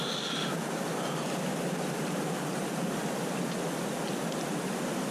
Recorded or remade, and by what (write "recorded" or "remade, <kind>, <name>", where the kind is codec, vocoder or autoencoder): recorded